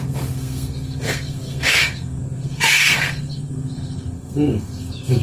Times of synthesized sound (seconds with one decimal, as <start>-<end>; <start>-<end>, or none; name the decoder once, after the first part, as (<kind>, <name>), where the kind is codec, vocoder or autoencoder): 0.0-5.2 (codec, SNAC)